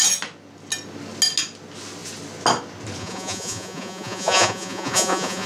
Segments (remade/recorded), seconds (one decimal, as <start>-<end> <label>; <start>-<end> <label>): 0.0-3.0 recorded; 3.0-5.5 remade